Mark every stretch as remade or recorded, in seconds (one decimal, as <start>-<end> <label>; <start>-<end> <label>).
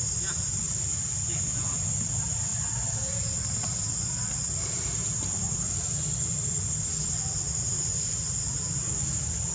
0.0-9.5 recorded